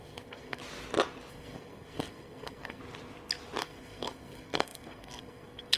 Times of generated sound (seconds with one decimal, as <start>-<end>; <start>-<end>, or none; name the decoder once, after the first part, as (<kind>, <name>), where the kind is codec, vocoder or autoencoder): 0.0-0.6 (codec, SNAC); 1.3-2.8; 3.6-5.8